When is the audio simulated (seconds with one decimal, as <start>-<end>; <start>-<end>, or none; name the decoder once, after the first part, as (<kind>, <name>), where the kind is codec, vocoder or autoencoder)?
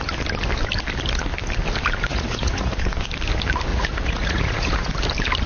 2.1-2.8 (vocoder, Vocos); 3.7-4.9